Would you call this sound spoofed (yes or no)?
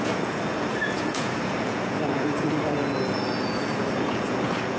yes